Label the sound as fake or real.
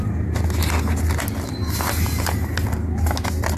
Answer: real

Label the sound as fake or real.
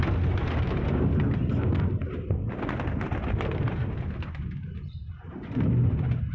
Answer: real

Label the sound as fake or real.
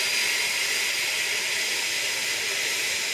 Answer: real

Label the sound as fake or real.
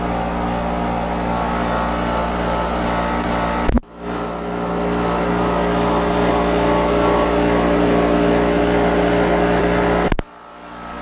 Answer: real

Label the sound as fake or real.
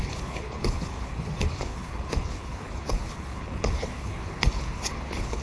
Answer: fake